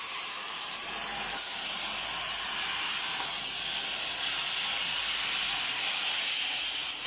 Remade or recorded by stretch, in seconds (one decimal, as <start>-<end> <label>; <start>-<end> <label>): 0.0-1.1 remade; 1.1-2.0 recorded; 2.0-3.1 remade; 3.1-5.7 recorded; 5.7-7.1 remade